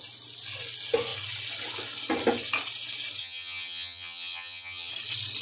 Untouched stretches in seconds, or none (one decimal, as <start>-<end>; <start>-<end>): 0.0-3.2; 4.9-5.4